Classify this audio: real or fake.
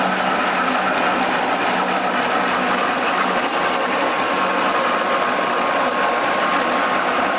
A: real